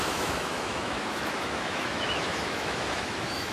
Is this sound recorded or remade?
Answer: remade